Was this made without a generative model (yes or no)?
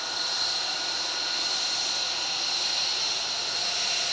yes